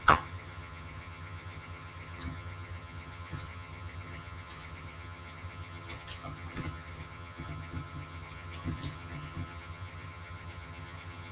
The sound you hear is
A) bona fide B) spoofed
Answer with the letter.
B